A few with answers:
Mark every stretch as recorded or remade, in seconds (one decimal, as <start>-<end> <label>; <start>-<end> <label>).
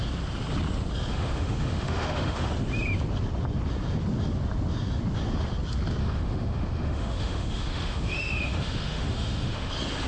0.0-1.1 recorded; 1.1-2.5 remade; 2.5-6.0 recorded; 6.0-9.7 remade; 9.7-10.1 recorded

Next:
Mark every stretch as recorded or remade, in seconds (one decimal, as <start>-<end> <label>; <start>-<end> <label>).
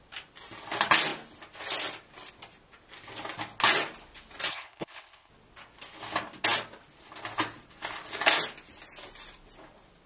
0.0-4.5 recorded; 4.5-5.3 remade; 5.3-10.1 recorded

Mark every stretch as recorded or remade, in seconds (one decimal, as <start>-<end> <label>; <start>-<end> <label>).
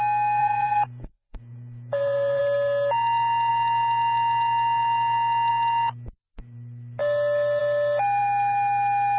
0.0-0.4 recorded; 0.4-2.4 remade; 2.4-9.2 recorded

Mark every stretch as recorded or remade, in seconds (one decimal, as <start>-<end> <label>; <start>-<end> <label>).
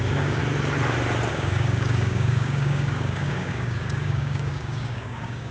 0.0-0.4 remade; 0.4-1.3 recorded; 1.3-5.5 remade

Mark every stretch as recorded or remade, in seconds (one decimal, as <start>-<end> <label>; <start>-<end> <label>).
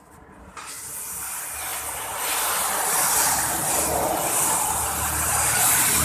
0.0-6.0 remade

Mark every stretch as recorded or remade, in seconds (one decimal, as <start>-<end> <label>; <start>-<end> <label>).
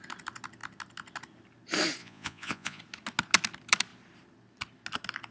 0.0-2.0 recorded; 2.0-2.8 remade; 2.8-5.3 recorded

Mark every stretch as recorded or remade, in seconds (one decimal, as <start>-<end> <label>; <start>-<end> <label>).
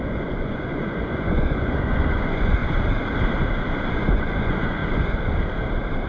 0.0-2.6 remade; 2.6-3.9 recorded; 3.9-4.8 remade; 4.8-6.1 recorded